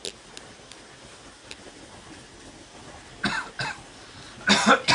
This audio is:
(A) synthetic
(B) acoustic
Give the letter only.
B